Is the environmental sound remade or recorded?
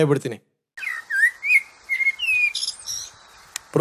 recorded